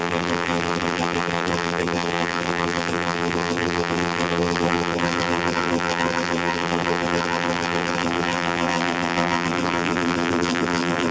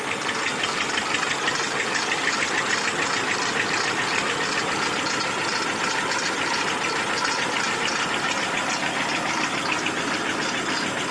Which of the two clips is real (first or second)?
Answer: second